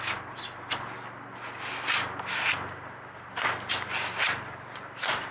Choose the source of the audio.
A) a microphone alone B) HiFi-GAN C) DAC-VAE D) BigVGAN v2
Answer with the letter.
A